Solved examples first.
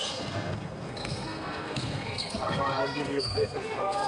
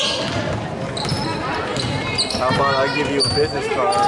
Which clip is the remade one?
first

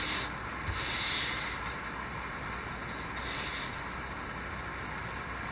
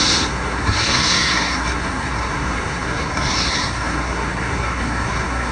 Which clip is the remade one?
second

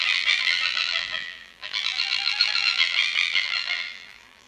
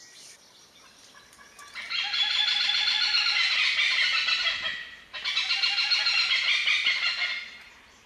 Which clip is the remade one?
first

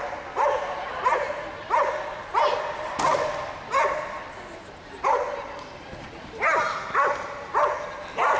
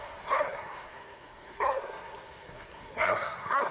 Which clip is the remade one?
second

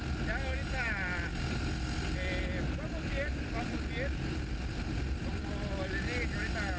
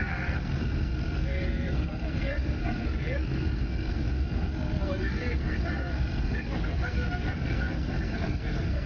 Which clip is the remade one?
second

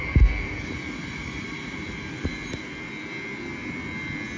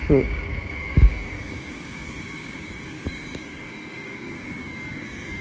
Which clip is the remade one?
second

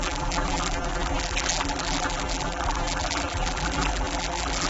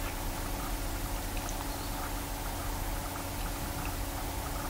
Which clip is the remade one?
first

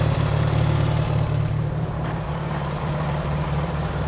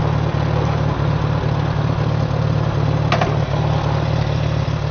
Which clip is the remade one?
first